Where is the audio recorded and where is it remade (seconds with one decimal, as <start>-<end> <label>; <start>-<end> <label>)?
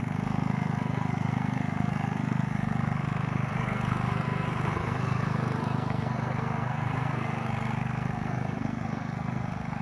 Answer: 0.0-9.8 remade